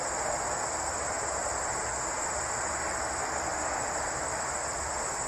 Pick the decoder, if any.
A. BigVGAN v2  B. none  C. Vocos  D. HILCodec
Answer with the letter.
B